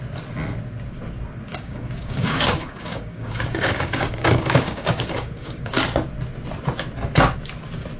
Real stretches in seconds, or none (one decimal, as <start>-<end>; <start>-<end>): 0.0-1.5; 5.8-8.0